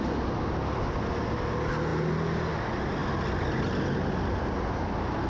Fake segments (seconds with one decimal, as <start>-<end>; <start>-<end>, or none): none

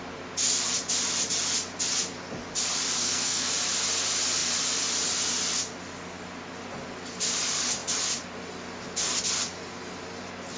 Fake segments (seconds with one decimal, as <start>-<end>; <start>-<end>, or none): 3.0-3.5

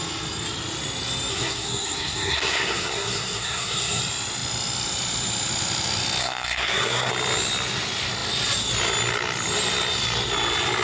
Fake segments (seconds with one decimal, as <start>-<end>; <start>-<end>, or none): 1.3-4.0; 6.2-7.1

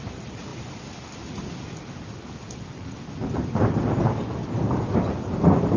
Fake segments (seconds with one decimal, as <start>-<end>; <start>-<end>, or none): none

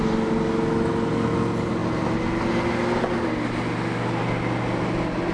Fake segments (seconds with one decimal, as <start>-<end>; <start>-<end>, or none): none

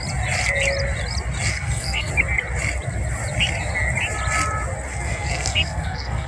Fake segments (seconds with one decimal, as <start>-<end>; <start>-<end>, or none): 1.5-2.1; 4.9-6.3

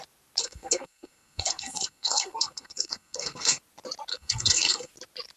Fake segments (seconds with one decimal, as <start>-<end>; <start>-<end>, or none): 0.4-3.6; 4.1-4.9

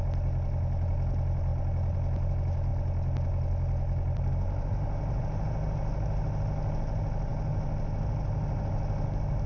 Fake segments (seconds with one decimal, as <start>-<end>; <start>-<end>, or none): none